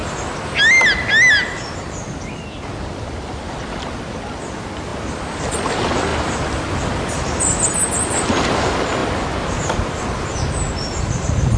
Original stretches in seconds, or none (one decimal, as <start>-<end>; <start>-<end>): 0.0-11.6